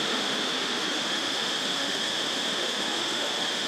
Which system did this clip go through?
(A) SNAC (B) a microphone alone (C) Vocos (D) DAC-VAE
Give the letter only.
D